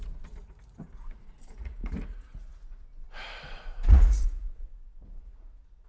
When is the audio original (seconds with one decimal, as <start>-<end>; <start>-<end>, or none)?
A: none